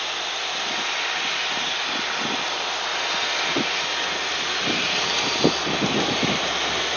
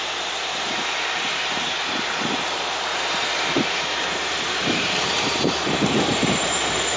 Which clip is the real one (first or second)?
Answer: first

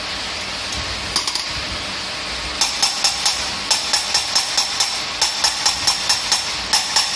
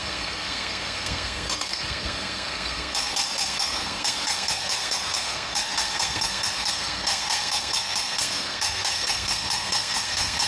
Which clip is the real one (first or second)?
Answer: first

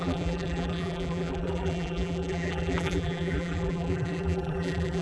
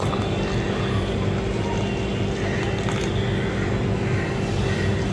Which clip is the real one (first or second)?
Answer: second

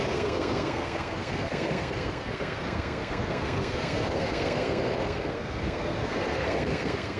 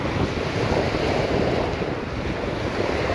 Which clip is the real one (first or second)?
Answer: second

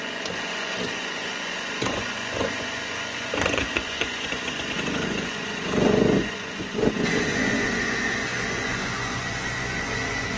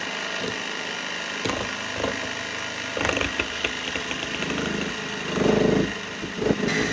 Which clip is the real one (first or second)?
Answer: second